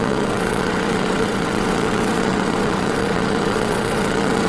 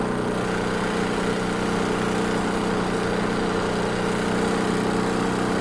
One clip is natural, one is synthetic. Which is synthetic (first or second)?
first